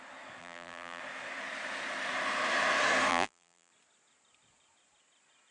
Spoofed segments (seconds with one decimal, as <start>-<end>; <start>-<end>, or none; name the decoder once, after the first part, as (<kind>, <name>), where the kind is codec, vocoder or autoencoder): 0.4-1.0 (vocoder, BigVGAN v2); 3.1-3.7

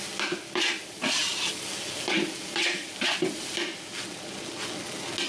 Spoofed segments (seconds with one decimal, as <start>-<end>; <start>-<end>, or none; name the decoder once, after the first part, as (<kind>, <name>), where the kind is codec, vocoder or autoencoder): none

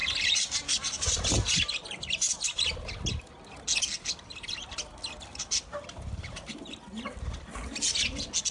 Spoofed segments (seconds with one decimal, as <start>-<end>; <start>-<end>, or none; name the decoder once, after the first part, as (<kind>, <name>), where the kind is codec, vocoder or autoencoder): 0.0-2.3 (vocoder, BigVGAN v2); 5.7-6.7